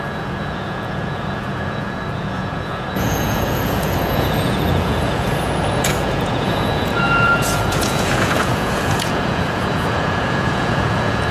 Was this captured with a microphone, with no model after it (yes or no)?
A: no